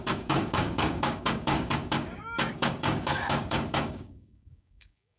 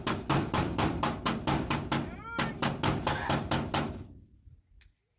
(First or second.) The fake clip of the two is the first